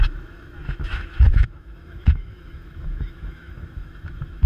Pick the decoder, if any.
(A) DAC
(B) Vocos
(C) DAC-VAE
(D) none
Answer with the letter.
C